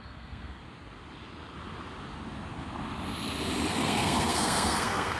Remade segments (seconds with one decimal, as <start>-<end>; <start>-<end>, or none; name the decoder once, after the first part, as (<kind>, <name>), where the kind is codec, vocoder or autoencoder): 0.0-0.6 (codec, SNAC); 3.7-5.2